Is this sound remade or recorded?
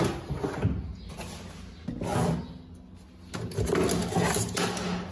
recorded